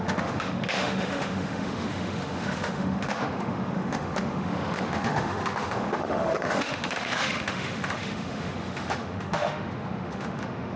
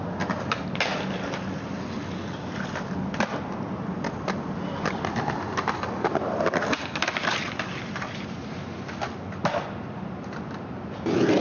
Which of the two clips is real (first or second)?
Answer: second